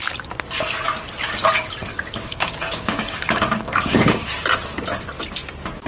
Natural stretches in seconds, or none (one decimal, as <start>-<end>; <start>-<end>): 0.0-1.9; 4.0-5.9